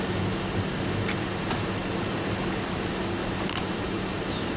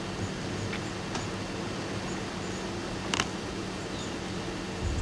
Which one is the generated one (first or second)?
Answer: first